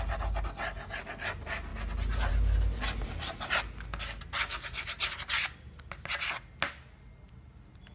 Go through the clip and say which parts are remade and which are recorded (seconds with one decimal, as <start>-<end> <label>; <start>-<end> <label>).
0.0-7.9 recorded